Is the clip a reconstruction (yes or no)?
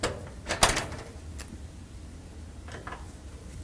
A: no